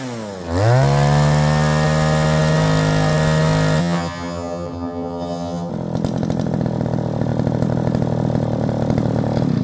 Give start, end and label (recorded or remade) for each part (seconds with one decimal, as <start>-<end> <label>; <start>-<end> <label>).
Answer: 0.0-3.8 recorded; 3.8-5.7 remade; 5.7-9.6 recorded